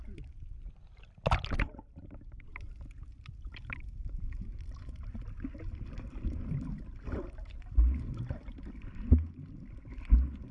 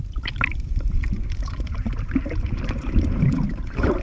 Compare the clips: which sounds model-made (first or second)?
second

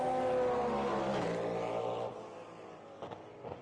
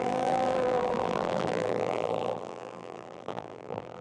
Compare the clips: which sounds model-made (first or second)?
second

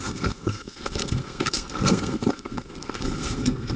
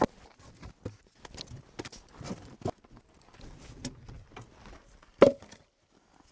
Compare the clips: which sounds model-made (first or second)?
first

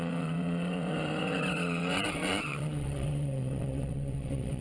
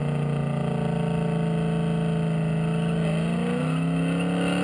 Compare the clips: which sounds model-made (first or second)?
first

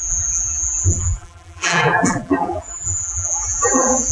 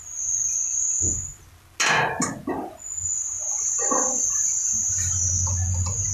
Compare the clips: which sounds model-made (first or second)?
first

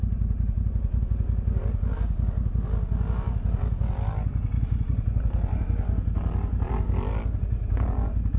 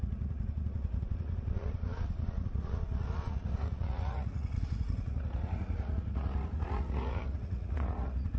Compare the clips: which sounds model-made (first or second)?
second